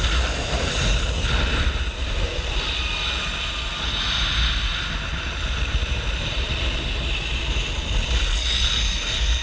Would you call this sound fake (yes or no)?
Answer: no